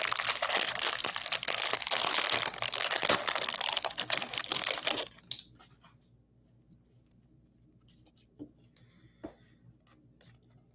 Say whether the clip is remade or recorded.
recorded